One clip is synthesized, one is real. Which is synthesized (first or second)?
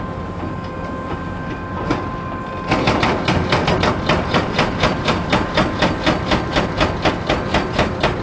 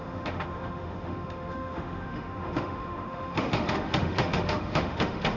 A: second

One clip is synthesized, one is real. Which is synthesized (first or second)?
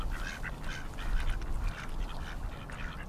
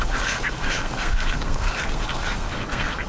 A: second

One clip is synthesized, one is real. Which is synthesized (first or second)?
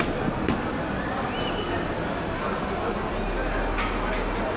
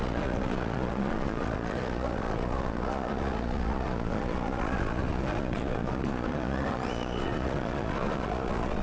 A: second